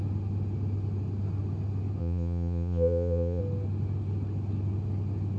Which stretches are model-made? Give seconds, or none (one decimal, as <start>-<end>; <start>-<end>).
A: 2.0-3.4

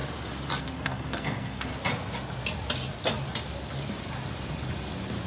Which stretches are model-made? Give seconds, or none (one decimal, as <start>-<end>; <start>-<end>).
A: 0.6-1.7